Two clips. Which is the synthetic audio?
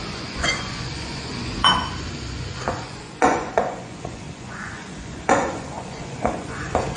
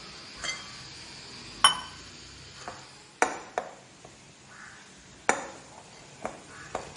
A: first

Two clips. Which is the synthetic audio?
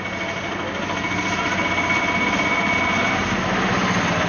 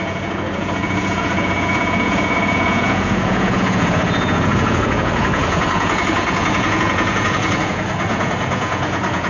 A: second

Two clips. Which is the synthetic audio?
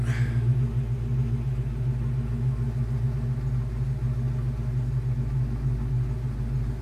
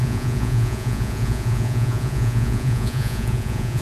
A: second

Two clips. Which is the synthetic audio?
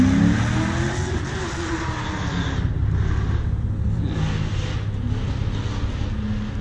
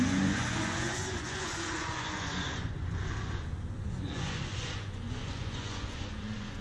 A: second